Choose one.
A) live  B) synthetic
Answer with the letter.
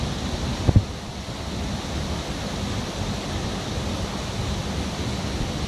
A